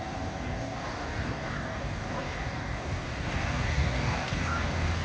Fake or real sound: fake